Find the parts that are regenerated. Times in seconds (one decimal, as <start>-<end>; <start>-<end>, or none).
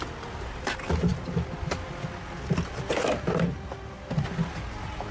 none